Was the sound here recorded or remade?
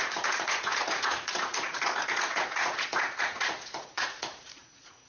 remade